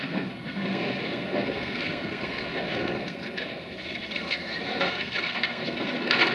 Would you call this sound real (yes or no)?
no